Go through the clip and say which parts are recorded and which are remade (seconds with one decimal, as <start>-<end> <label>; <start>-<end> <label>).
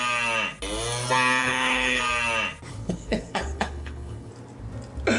0.0-1.4 recorded; 1.4-2.0 remade; 2.0-2.7 recorded; 2.7-4.3 remade; 4.3-5.2 recorded